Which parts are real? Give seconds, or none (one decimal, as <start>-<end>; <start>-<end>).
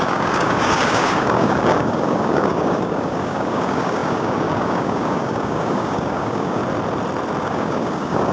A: 6.6-7.4